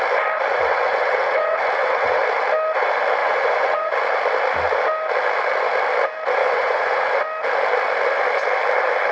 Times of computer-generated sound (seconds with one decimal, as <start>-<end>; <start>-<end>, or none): 0.5-2.2; 3.2-3.9; 6.4-7.1